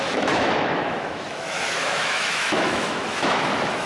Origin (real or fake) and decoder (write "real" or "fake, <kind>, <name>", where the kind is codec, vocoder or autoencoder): fake, autoencoder, DAC-VAE